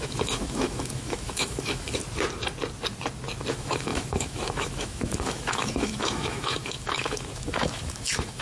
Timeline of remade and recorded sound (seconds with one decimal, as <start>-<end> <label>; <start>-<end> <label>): 0.0-2.0 remade; 2.0-3.5 recorded; 3.5-8.4 remade